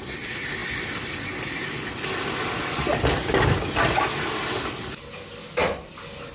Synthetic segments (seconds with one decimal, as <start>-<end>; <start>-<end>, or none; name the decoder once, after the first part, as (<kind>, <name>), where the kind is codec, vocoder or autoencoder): none